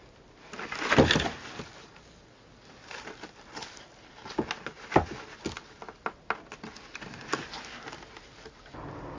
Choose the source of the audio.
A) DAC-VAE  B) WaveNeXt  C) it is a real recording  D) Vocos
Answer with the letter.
C